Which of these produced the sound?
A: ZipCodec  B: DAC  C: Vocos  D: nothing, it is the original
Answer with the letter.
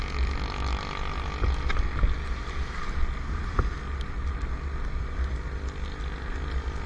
D